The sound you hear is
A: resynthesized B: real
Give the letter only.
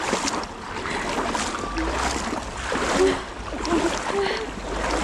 B